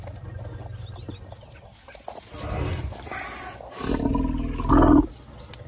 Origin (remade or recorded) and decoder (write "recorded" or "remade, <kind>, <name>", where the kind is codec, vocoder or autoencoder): recorded